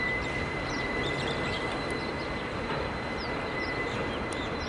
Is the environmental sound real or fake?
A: fake